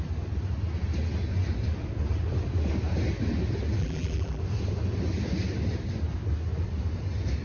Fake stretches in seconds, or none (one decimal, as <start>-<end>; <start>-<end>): 3.8-4.4

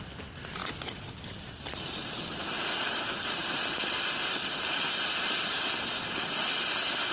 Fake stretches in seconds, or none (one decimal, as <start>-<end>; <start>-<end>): 0.0-3.6; 4.9-7.1